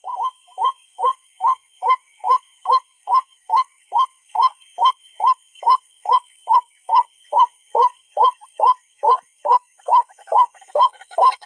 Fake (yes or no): yes